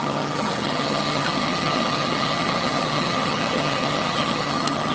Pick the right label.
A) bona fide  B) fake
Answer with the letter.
B